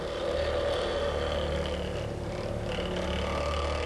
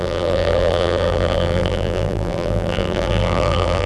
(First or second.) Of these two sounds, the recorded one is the first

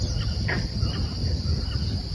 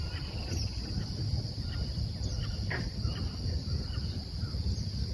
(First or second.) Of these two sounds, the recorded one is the first